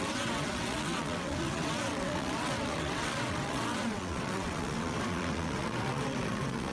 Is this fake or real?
fake